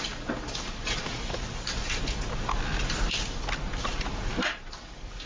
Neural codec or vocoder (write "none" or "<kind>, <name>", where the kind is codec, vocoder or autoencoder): none